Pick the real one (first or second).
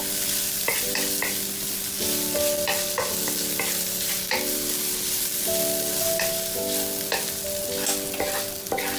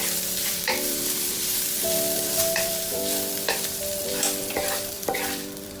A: first